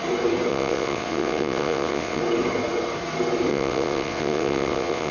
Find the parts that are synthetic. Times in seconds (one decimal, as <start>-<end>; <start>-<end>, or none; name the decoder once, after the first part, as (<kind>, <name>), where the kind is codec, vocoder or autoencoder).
0.5-2.2 (vocoder, WaveNeXt); 3.5-5.1